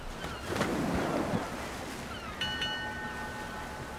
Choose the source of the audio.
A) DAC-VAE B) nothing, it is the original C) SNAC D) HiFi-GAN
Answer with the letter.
B